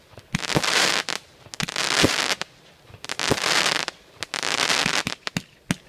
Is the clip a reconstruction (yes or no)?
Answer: no